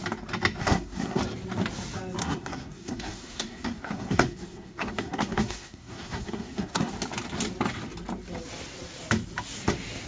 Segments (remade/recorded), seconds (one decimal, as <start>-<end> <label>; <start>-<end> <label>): 0.0-0.6 recorded; 0.6-1.2 remade; 1.2-2.2 recorded; 2.2-6.9 remade; 6.9-10.1 recorded